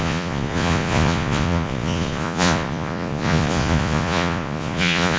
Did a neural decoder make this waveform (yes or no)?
yes